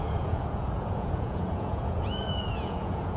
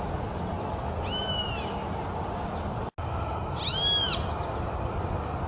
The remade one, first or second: first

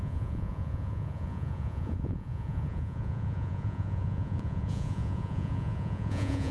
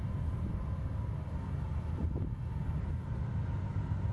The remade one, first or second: first